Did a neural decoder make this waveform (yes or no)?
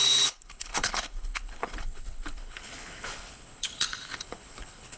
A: yes